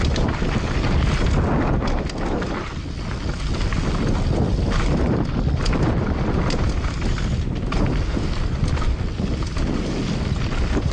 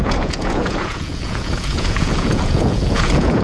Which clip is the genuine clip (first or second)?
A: first